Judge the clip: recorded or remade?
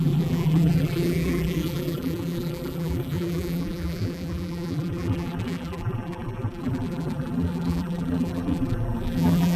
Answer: remade